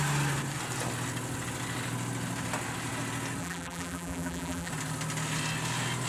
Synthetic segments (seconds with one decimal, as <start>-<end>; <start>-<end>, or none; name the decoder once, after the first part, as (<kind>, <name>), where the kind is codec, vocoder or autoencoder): 3.4-4.7 (vocoder, BigVGAN v2)